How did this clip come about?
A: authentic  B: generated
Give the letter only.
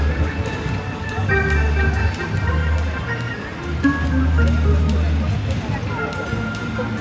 A